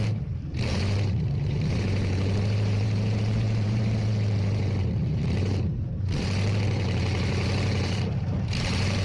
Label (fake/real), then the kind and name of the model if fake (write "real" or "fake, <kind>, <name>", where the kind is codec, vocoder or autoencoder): fake, vocoder, BigVGAN v2